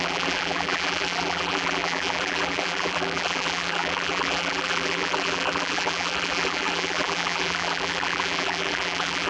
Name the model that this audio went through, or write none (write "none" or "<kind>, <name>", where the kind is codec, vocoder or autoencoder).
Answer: vocoder, BigVGAN v2